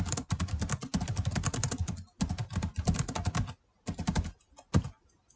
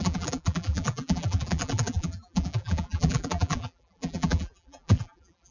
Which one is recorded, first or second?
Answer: first